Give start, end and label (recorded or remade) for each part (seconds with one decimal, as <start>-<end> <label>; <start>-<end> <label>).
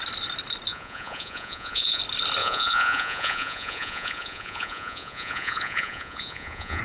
0.0-0.7 recorded; 0.7-2.0 remade; 2.0-2.4 recorded; 2.4-6.8 remade